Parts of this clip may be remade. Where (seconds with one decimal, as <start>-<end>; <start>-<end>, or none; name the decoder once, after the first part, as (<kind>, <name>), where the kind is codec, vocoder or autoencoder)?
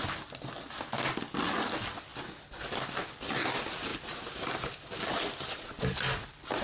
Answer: 3.9-5.0 (vocoder, BigVGAN v2)